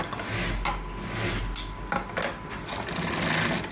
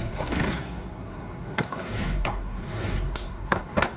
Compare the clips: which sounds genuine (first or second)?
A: first